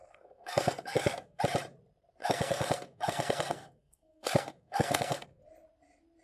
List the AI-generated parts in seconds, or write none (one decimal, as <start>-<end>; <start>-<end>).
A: 0.0-1.4; 2.2-5.4